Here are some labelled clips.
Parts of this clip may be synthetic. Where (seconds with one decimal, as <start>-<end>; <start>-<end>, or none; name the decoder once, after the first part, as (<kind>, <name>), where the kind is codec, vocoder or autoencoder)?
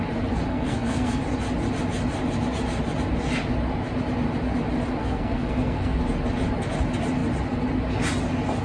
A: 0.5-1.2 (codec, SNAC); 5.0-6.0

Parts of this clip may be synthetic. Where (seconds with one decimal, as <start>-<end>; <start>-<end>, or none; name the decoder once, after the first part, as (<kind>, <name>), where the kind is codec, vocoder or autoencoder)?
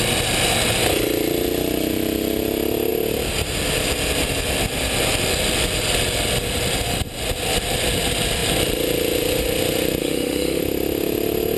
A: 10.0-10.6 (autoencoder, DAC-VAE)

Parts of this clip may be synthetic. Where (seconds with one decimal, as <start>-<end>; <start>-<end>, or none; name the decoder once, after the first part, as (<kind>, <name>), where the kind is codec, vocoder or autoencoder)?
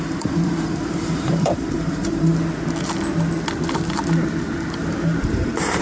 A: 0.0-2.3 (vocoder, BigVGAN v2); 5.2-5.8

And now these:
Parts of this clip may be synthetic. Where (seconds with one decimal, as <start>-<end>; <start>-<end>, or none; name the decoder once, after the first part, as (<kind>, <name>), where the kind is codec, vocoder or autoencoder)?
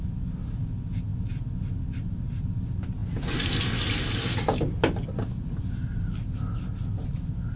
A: none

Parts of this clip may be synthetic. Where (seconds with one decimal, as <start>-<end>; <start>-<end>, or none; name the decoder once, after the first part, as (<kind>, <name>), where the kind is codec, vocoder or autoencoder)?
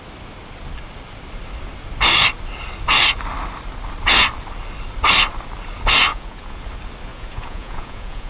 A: 6.1-6.6 (vocoder, Vocos); 7.1-8.3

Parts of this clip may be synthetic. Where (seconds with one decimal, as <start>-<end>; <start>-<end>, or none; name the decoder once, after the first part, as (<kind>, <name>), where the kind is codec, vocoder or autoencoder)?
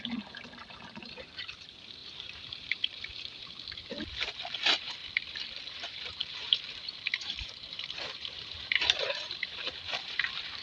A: 0.0-5.0 (vocoder, BigVGAN v2); 5.7-10.6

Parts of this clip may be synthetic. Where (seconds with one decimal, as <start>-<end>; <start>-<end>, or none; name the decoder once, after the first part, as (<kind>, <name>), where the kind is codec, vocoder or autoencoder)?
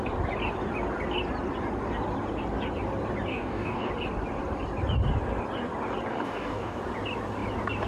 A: 3.3-3.9 (codec, DAC); 6.1-6.8